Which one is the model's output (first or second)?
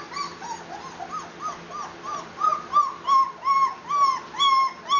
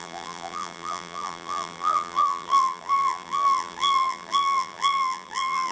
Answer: second